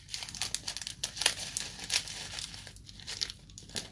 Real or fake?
real